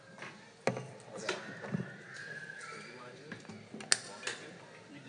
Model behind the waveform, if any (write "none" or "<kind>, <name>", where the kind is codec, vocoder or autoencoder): none